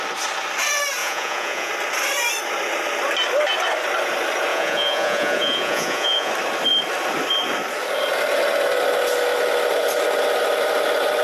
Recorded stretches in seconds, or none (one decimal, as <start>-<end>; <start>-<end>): 0.0-1.0; 1.7-4.5; 6.3-11.2

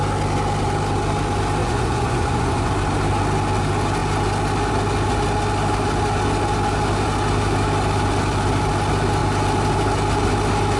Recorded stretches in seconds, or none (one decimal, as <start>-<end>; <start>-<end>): 0.0-1.6; 2.7-10.8